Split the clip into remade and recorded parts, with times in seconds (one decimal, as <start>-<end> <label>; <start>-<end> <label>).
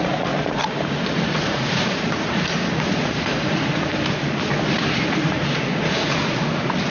0.0-0.6 remade; 0.6-1.3 recorded; 1.3-3.9 remade; 3.9-4.9 recorded; 4.9-6.9 remade